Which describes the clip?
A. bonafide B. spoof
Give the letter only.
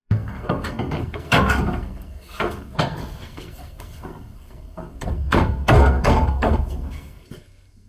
B